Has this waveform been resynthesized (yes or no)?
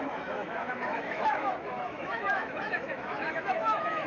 yes